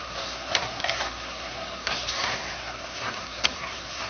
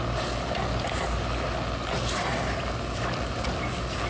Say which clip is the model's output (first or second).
first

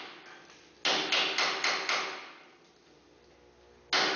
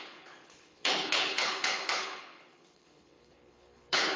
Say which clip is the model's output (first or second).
second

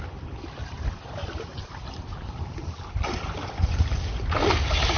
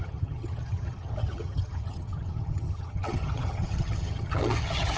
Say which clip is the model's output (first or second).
second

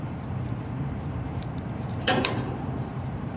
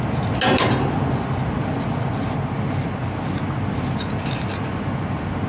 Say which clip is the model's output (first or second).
first